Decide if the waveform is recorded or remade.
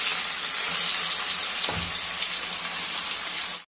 recorded